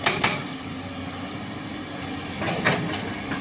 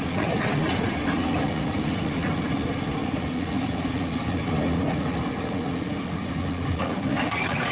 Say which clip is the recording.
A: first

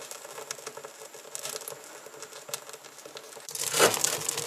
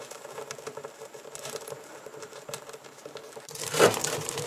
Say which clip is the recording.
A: first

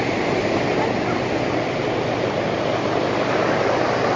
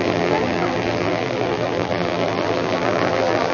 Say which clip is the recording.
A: first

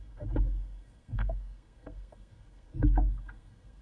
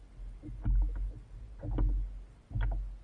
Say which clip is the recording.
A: second